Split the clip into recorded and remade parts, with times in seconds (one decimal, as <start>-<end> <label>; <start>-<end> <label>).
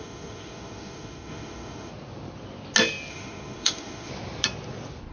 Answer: 0.0-1.9 remade; 1.9-3.1 recorded; 3.1-4.1 remade; 4.1-5.1 recorded